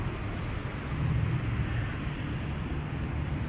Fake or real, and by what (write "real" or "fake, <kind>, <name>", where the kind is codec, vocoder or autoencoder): real